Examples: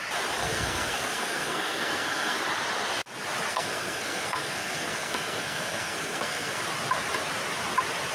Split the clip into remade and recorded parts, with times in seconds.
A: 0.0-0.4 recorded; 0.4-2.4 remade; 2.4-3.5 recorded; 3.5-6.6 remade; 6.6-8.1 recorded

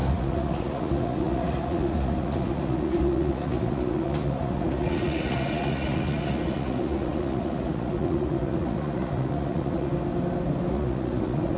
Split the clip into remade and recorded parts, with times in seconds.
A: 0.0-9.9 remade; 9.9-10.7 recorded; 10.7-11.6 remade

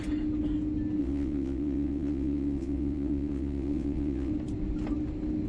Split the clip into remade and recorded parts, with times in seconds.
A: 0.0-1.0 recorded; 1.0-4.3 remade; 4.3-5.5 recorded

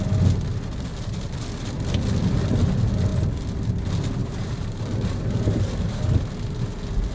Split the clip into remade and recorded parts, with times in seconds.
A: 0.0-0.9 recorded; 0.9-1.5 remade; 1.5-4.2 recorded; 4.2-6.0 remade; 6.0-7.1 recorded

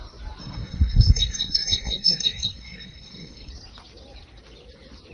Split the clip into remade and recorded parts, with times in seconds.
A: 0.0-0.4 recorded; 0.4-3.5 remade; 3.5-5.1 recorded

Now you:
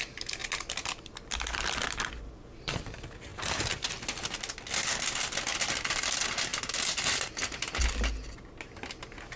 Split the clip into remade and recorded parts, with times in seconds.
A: 0.0-3.3 recorded; 3.3-3.8 remade; 3.8-6.5 recorded; 6.5-7.3 remade; 7.3-9.4 recorded

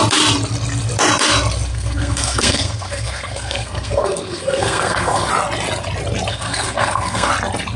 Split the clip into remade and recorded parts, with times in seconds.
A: 0.0-1.7 recorded; 1.7-5.3 remade; 5.3-6.3 recorded; 6.3-7.3 remade; 7.3-7.8 recorded

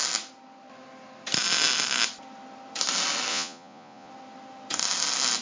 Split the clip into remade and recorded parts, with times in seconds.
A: 0.0-3.3 recorded; 3.3-4.1 remade; 4.1-5.4 recorded